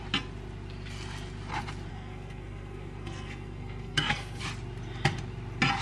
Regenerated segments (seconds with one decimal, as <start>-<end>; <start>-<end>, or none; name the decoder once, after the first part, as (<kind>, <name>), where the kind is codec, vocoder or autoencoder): 1.9-4.4 (codec, SNAC)